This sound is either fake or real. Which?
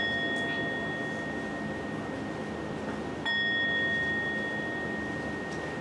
real